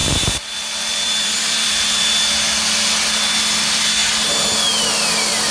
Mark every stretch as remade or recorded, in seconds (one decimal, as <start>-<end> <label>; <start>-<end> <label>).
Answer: 0.0-1.8 remade; 1.8-5.5 recorded